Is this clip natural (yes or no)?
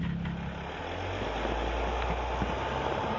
yes